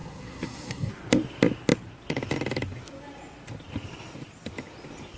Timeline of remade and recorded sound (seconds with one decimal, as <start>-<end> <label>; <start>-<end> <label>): 0.0-0.9 remade; 0.9-5.2 recorded